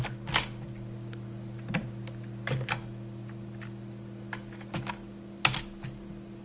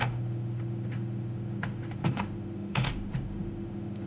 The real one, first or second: first